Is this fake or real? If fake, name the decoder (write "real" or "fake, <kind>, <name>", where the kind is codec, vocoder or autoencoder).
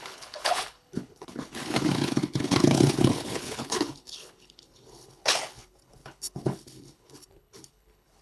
fake, codec, HILCodec